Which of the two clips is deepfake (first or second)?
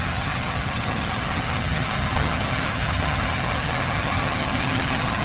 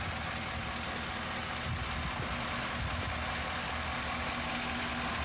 first